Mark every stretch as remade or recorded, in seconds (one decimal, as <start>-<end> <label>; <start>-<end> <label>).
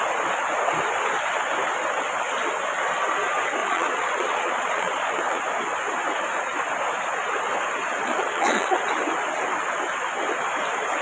0.0-3.6 recorded; 3.6-5.4 remade; 5.4-8.0 recorded; 8.0-8.7 remade; 8.7-11.0 recorded